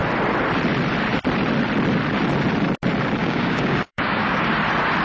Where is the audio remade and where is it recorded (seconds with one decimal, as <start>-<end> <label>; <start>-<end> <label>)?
0.0-3.2 recorded; 3.2-4.5 remade; 4.5-5.0 recorded